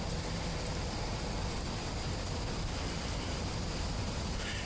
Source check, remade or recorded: recorded